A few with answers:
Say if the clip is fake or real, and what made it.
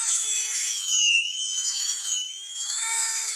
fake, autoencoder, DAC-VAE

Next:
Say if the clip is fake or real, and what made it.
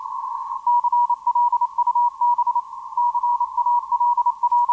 real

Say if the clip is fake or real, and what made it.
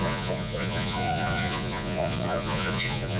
fake, vocoder, Vocos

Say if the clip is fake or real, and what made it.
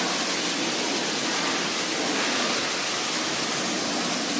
real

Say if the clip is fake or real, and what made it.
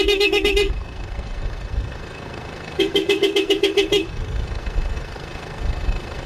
fake, codec, SNAC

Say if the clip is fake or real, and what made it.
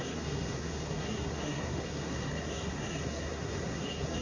fake, codec, SNAC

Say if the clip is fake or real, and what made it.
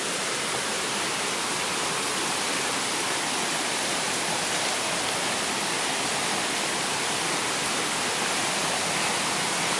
real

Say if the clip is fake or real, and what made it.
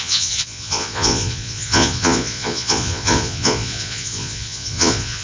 fake, vocoder, Vocos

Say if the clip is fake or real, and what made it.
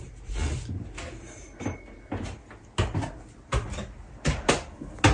real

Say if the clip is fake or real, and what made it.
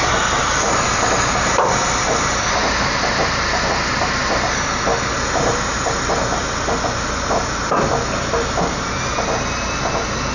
real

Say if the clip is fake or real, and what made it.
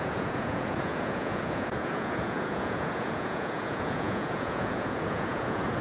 fake, vocoder, Vocos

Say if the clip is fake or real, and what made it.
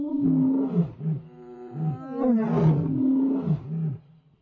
real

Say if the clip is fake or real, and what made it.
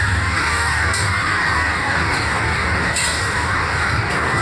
fake, codec, DAC